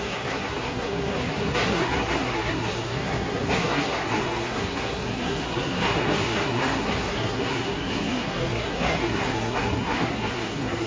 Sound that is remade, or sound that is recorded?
remade